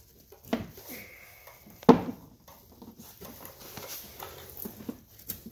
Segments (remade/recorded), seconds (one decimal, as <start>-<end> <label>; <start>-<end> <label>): 0.0-0.5 recorded; 0.5-1.4 remade; 1.4-2.5 recorded; 2.5-5.5 remade